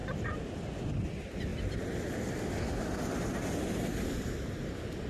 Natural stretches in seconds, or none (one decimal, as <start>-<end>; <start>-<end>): 0.8-5.1